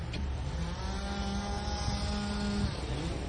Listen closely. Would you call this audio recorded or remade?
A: recorded